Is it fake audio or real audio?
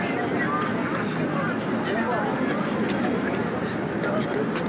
real